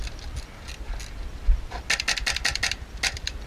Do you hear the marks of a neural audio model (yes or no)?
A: no